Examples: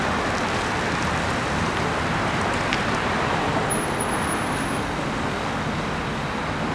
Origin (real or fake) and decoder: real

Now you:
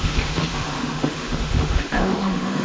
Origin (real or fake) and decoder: fake, autoencoder, DAC-VAE